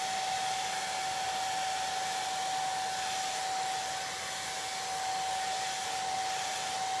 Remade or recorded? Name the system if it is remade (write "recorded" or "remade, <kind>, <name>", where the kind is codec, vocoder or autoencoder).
recorded